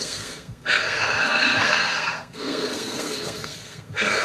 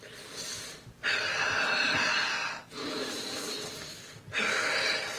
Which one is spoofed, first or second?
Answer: first